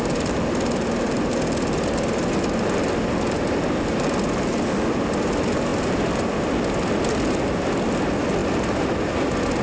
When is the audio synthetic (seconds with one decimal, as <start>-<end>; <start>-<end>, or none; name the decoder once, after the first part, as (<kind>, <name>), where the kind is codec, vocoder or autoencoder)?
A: none